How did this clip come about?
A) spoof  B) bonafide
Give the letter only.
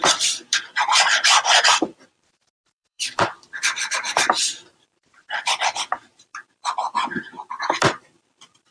A